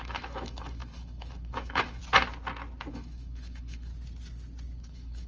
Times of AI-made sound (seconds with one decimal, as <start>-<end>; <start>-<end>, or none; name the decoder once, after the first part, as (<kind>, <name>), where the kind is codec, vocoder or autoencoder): 0.0-2.0 (autoencoder, DAC-VAE); 2.9-3.9; 4.8-5.3